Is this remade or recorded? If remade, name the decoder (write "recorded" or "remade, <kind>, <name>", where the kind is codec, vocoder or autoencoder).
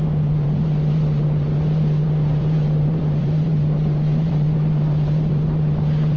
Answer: remade, vocoder, BigVGAN v2